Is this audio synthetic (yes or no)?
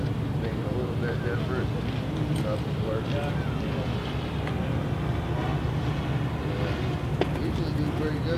no